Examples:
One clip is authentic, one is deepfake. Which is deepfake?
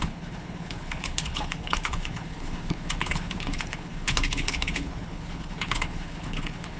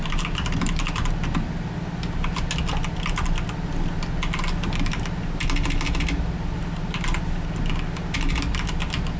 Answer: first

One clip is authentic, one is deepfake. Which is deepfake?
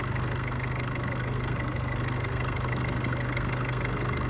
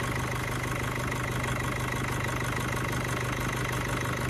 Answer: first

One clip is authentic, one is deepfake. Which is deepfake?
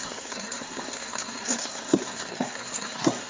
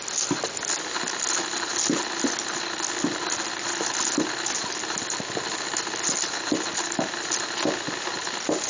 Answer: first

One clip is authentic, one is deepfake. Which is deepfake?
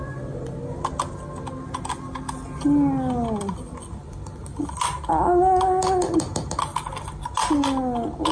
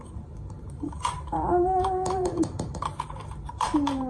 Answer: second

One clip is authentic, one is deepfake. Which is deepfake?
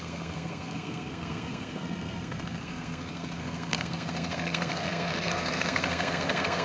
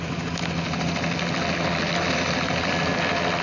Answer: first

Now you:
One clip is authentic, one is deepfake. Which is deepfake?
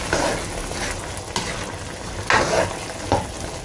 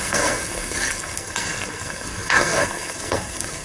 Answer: second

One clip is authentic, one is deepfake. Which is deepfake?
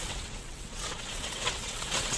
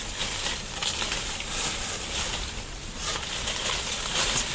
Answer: first